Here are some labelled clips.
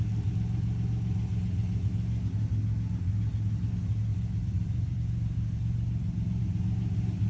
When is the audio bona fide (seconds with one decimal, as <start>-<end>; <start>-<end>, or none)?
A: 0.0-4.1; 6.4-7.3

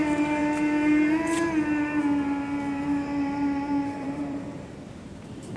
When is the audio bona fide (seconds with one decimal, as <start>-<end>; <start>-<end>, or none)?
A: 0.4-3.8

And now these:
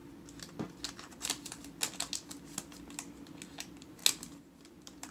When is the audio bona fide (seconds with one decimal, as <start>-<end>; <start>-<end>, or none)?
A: 0.0-1.0; 1.6-3.6; 4.0-4.5

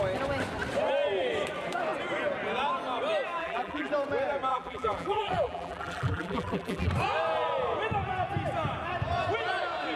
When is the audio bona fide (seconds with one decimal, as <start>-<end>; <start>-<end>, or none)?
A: 0.0-3.4; 3.9-4.5; 6.9-10.0